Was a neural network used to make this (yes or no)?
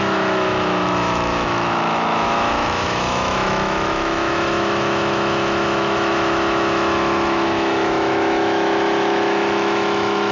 yes